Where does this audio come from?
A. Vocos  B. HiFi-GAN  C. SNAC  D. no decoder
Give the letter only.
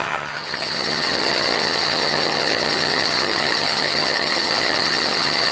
B